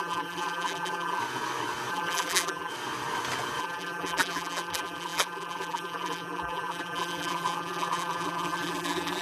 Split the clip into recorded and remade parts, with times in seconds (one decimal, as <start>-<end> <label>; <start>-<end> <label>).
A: 0.0-1.2 remade; 1.2-1.9 recorded; 1.9-2.7 remade; 2.7-3.6 recorded; 3.6-9.2 remade